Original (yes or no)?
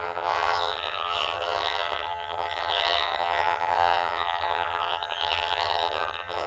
no